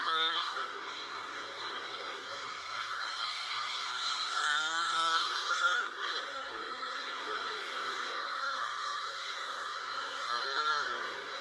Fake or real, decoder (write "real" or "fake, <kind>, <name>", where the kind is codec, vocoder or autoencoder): fake, codec, SNAC